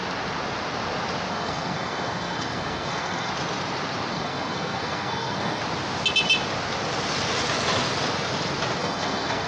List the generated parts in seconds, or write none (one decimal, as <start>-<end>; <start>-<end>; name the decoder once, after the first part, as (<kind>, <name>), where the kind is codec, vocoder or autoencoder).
1.3-3.3 (codec, SNAC); 4.1-5.6; 8.8-9.5